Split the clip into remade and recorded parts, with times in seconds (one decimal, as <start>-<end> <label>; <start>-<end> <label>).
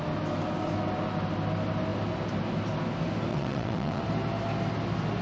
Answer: 0.0-3.3 recorded; 3.3-4.0 remade; 4.0-5.2 recorded